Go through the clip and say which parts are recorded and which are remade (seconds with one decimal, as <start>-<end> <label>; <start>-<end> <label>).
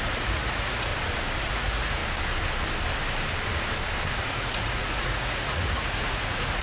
0.0-0.9 remade; 0.9-1.5 recorded; 1.5-2.0 remade; 2.0-4.1 recorded; 4.1-6.6 remade